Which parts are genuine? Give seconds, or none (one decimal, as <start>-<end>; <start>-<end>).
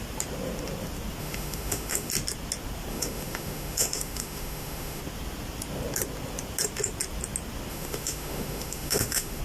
0.0-1.2; 2.1-2.9; 5.0-7.7